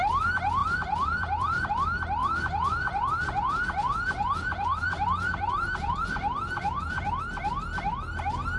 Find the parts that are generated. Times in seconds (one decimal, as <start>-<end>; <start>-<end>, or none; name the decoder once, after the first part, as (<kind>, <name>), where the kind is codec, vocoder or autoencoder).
0.6-1.7 (vocoder, Vocos); 2.2-7.2